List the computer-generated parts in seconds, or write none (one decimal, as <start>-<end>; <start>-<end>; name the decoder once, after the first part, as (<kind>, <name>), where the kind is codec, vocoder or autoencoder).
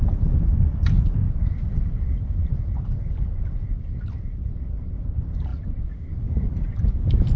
none